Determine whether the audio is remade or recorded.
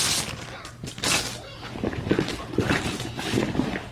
recorded